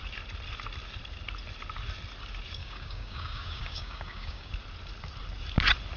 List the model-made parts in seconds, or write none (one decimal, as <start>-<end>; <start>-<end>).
2.6-4.5